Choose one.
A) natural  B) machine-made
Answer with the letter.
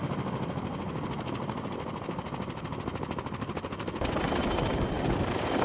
A